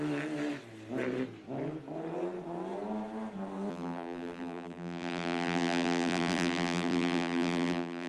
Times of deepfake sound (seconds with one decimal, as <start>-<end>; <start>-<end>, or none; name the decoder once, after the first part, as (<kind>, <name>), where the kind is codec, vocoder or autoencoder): 3.7-8.1 (vocoder, BigVGAN v2)